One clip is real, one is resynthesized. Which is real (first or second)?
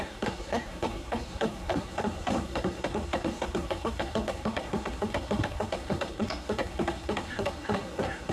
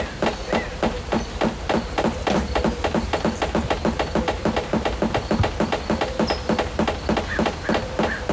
second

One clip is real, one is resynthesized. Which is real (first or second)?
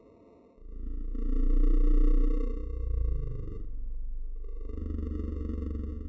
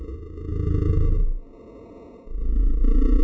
first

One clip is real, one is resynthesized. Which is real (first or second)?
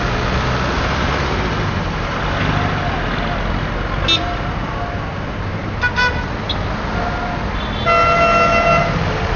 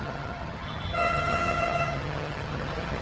first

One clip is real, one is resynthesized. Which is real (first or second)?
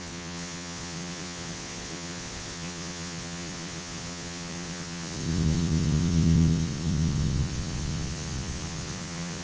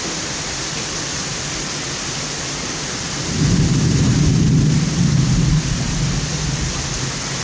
second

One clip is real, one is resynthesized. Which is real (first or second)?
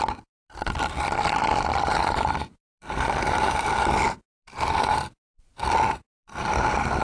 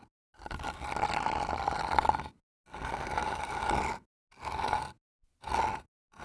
second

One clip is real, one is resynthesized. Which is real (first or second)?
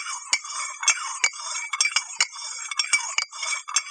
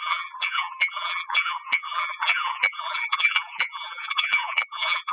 first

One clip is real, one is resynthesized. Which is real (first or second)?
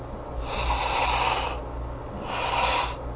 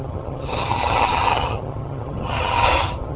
first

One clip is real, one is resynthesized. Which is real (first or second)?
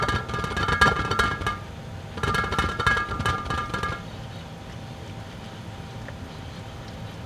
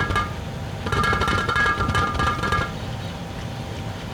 first